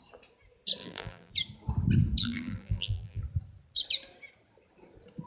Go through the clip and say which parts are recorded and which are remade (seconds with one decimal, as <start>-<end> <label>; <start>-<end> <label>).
0.0-0.8 recorded; 0.8-1.3 remade; 1.3-2.2 recorded; 2.2-3.2 remade; 3.2-5.3 recorded

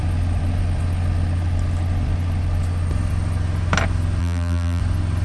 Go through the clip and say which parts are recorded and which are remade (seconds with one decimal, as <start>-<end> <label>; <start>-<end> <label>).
0.0-4.2 recorded; 4.2-4.8 remade; 4.8-5.2 recorded